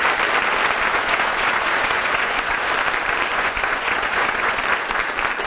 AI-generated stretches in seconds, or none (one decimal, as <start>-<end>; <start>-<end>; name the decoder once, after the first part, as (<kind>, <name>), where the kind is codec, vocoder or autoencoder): 0.9-2.7 (vocoder, Vocos); 3.3-4.6